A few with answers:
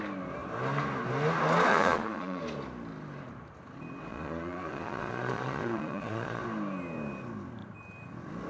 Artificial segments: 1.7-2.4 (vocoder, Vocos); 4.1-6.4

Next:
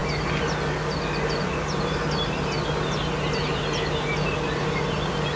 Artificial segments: none

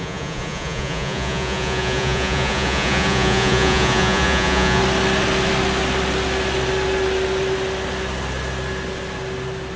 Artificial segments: 0.0-4.8 (vocoder, Vocos)

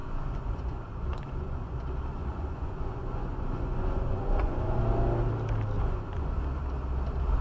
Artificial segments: 0.0-1.8 (vocoder, Vocos); 2.2-4.8; 5.8-6.4

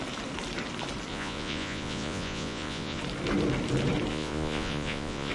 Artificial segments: 1.1-3.0 (vocoder, Vocos); 4.1-5.3